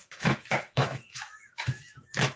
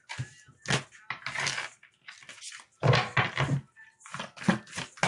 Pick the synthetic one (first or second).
first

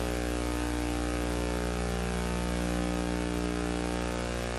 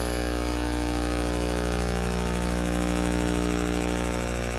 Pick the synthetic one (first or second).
second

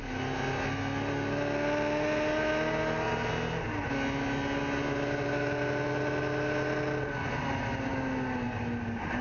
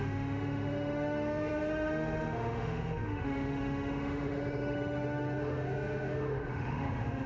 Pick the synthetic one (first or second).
second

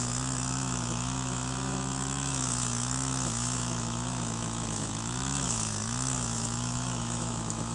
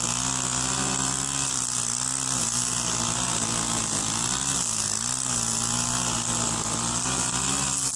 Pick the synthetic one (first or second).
first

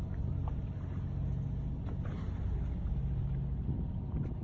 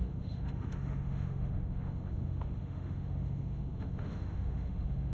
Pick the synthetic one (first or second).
second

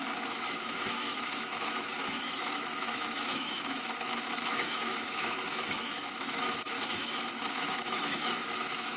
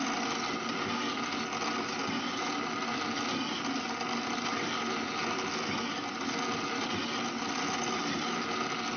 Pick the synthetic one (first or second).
first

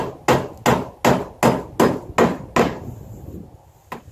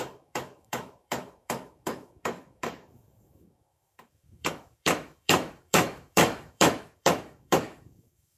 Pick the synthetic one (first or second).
second